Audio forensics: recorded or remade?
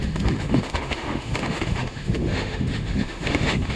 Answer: remade